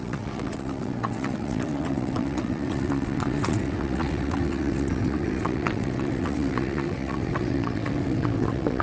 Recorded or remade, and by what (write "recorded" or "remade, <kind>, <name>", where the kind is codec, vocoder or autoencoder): remade, vocoder, WaveNeXt